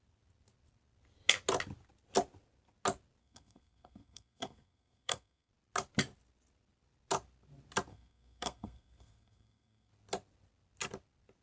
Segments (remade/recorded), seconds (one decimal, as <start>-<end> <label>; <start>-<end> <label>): 0.0-3.2 recorded; 3.2-5.5 remade; 5.5-7.9 recorded; 7.9-9.9 remade; 9.9-11.4 recorded